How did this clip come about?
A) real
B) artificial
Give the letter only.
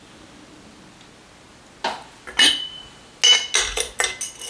A